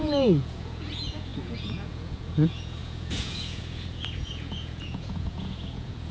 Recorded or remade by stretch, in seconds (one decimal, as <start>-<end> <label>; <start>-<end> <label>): 0.0-6.1 remade

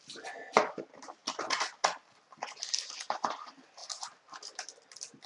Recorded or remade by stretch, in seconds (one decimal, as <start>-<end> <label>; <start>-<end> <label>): 0.0-5.3 recorded

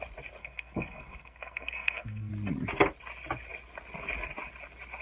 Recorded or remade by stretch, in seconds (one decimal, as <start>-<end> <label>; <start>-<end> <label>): 0.0-0.4 recorded; 0.4-2.3 remade; 2.3-5.0 recorded

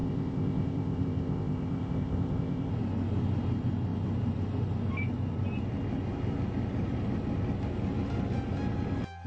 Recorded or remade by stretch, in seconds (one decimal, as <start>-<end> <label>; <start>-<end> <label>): 0.0-2.7 remade; 2.7-9.3 recorded

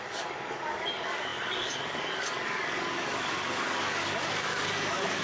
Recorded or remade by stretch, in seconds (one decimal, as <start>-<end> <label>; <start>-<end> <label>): 0.0-5.2 remade

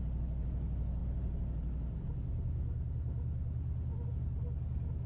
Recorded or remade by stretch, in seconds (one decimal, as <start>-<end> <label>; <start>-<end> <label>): 0.0-5.1 recorded